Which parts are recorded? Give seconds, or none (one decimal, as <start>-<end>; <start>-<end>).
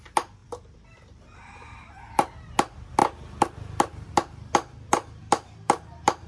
0.0-0.4; 2.0-5.2